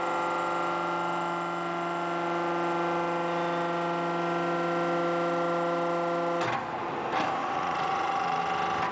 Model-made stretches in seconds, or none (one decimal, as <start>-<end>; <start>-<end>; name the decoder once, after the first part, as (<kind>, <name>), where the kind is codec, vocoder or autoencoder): 7.4-8.4 (vocoder, Vocos)